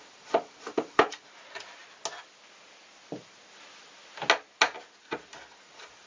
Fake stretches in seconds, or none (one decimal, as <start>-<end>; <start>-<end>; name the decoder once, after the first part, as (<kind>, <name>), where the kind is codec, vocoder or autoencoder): 0.0-1.8 (vocoder, BigVGAN v2); 5.5-6.1